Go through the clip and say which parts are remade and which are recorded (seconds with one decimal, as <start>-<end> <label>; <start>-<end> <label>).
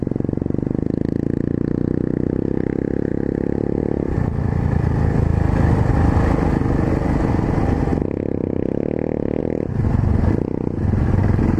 0.0-11.6 recorded